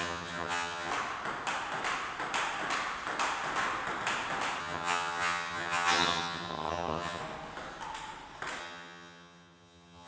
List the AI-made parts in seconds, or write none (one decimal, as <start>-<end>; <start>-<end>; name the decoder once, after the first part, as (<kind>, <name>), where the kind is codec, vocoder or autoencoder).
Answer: 0.0-0.9 (vocoder, HiFi-GAN); 4.6-7.2; 8.6-10.1